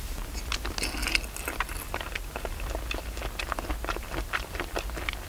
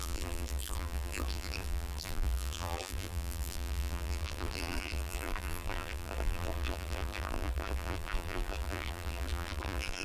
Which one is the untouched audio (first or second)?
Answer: first